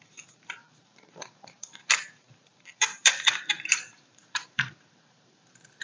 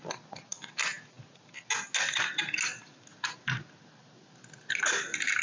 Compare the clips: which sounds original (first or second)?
second